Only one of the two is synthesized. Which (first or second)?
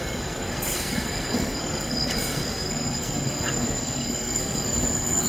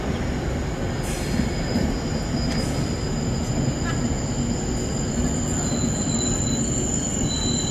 first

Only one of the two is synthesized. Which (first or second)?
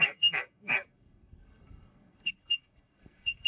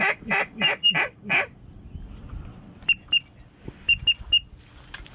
first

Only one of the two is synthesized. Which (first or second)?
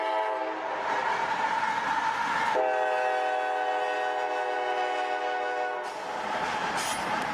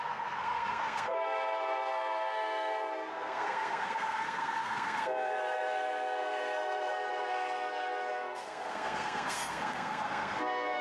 second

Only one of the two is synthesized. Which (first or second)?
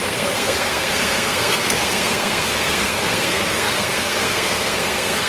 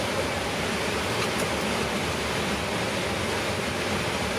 first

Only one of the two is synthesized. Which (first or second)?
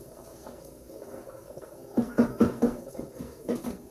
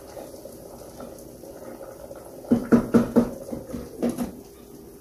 first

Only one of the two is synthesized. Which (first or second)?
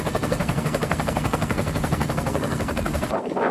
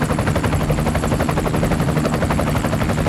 first